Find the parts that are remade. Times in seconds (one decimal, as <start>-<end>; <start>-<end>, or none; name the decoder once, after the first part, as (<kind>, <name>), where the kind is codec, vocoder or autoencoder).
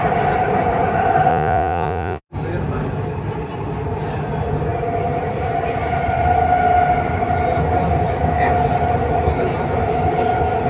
1.3-2.2 (vocoder, Vocos)